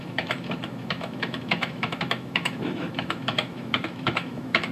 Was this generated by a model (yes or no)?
yes